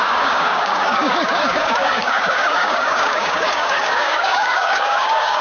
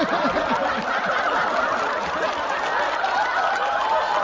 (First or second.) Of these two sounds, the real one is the second